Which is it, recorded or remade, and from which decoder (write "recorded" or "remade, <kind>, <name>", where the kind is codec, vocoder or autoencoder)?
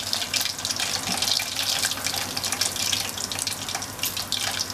recorded